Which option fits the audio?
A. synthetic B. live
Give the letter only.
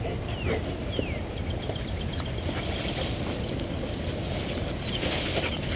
B